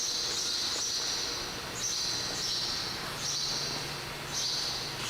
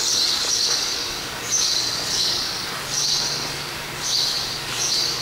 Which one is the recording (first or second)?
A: first